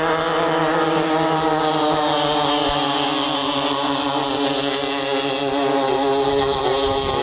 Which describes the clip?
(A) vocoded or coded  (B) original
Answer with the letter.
B